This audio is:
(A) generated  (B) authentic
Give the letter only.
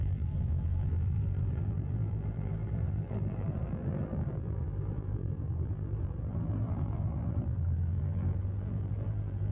A